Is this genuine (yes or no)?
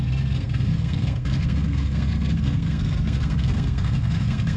no